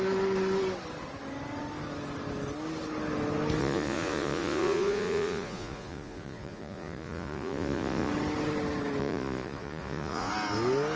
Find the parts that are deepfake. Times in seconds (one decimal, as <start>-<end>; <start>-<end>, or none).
3.6-8.1; 9.0-10.3